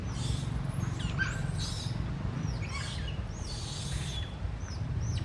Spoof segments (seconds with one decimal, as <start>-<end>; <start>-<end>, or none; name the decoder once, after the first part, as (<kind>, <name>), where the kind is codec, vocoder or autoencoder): none